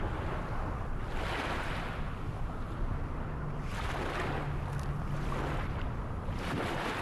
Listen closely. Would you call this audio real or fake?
real